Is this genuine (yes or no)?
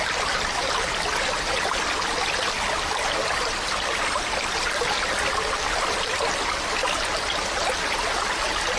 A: yes